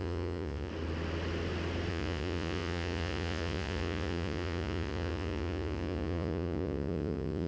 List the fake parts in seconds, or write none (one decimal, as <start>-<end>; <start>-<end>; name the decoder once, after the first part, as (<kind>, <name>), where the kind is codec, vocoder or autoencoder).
0.0-0.7 (vocoder, Vocos); 1.9-7.5